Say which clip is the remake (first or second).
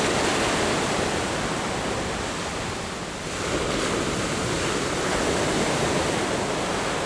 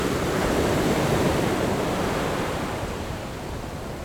second